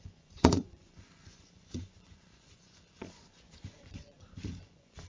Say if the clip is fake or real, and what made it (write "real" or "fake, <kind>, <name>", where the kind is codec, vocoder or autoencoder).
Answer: fake, vocoder, Vocos